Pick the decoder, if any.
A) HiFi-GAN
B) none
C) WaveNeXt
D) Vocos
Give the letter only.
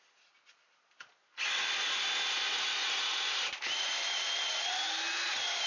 B